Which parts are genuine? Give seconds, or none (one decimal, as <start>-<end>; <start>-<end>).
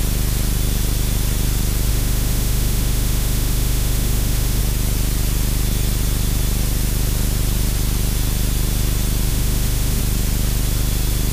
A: 0.0-1.9; 4.6-9.3; 10.0-11.3